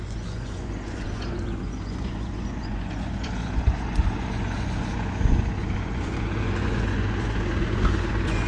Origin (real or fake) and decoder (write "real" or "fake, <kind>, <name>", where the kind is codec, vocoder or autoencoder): fake, vocoder, Vocos